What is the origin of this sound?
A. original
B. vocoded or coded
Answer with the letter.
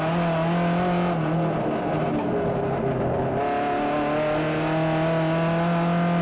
A